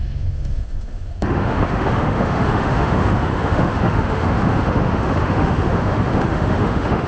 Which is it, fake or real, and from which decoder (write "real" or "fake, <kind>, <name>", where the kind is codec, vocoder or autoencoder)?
fake, autoencoder, DAC-VAE